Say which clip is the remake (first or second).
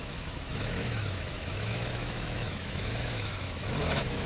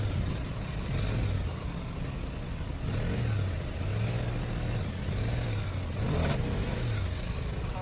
first